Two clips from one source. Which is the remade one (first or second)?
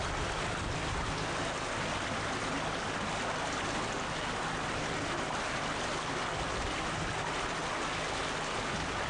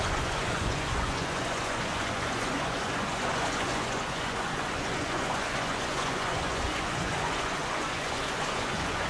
second